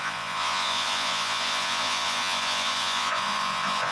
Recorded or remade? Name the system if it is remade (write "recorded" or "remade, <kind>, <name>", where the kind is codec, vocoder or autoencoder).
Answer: remade, vocoder, Vocos